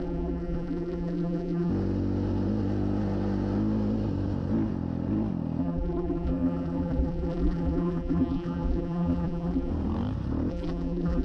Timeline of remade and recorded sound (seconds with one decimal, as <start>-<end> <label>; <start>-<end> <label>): 0.0-1.7 remade; 1.7-5.6 recorded; 5.6-9.7 remade; 9.7-10.5 recorded; 10.5-11.2 remade